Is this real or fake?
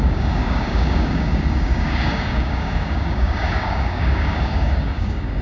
fake